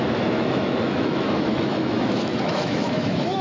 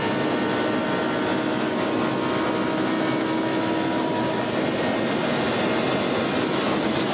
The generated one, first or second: first